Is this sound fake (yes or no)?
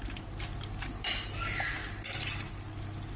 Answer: no